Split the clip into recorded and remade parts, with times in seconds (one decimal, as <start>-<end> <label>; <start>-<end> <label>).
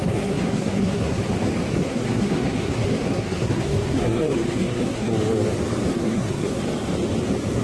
0.0-1.2 remade; 1.2-1.7 recorded; 1.7-5.1 remade; 5.1-5.9 recorded; 5.9-6.6 remade; 6.6-7.6 recorded